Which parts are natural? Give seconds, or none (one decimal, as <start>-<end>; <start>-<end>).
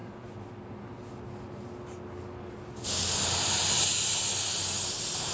0.0-5.3